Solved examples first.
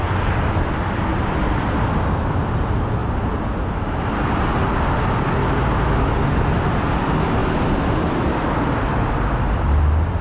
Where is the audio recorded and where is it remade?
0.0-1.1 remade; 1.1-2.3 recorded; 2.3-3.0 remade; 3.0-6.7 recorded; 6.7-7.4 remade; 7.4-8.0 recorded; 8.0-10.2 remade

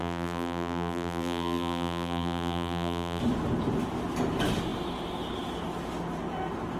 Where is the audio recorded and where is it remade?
0.0-3.2 remade; 3.2-6.8 recorded

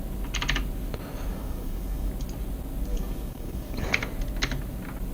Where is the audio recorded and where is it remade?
0.0-1.3 recorded; 1.3-2.1 remade; 2.1-2.9 recorded; 2.9-3.9 remade; 3.9-5.1 recorded

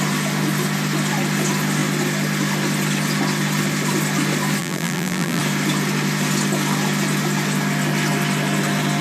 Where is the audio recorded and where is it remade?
0.0-4.6 recorded; 4.6-5.4 remade; 5.4-9.0 recorded

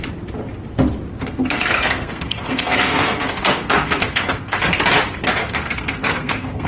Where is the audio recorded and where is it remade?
0.0-1.1 recorded; 1.1-4.6 remade; 4.6-5.4 recorded; 5.4-6.7 remade